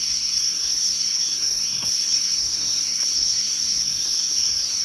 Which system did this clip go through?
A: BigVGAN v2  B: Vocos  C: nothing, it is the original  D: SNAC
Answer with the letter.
D